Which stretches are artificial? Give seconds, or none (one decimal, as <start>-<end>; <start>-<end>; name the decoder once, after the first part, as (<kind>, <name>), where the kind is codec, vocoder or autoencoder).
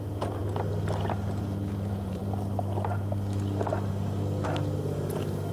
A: 0.0-0.4 (vocoder, Vocos); 1.4-2.2